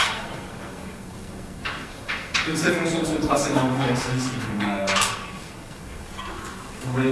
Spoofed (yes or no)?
yes